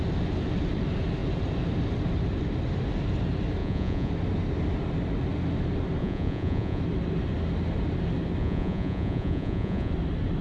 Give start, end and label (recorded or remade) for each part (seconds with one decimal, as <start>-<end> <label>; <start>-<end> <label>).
0.0-3.6 recorded; 3.6-4.1 remade; 4.1-6.0 recorded; 6.0-6.8 remade; 6.8-8.4 recorded; 8.4-9.9 remade; 9.9-10.4 recorded